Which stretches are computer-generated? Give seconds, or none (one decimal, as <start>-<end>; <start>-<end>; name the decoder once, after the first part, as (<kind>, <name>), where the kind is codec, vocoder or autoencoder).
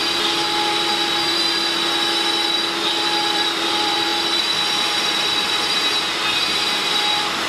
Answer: 2.9-7.5 (vocoder, BigVGAN v2)